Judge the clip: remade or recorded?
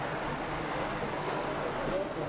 recorded